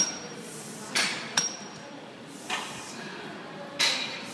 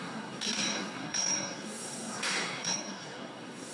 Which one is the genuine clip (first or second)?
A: first